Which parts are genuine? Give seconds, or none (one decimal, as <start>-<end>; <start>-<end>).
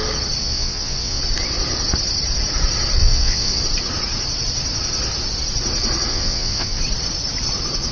0.0-0.4; 1.2-3.0; 3.6-6.1; 6.8-7.9